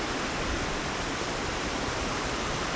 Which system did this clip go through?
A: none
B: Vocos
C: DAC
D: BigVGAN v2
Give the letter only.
A